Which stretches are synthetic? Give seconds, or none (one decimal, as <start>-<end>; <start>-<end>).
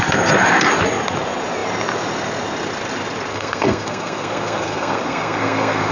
3.3-5.9